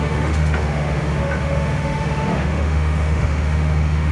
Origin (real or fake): fake